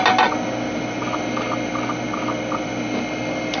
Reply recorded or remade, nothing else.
recorded